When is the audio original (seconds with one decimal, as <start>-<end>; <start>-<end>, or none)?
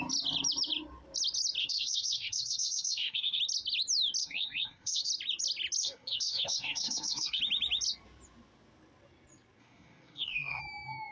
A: 0.0-1.6; 3.4-4.2; 5.1-5.8; 7.4-9.6; 10.6-11.1